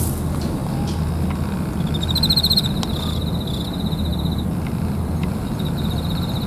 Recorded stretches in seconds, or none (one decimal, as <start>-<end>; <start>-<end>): 0.0-4.1